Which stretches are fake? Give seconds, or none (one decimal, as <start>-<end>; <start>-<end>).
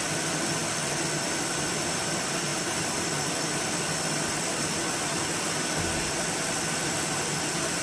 none